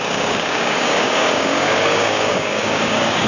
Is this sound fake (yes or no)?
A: yes